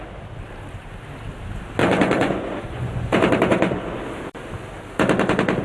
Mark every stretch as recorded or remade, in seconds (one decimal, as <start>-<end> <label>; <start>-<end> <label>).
0.0-1.8 recorded; 1.8-4.0 remade; 4.0-5.6 recorded